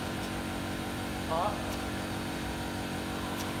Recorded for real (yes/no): no